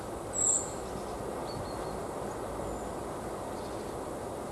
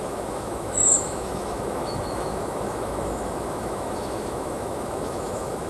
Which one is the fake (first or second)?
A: second